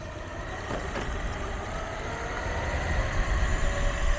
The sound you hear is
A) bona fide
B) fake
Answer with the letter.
A